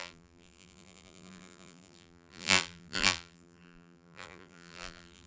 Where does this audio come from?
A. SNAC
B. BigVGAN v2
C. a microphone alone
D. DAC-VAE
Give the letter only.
B